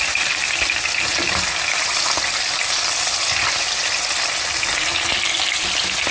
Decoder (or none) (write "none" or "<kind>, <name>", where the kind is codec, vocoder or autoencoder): none